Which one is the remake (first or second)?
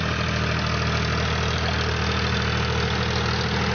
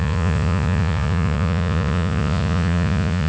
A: second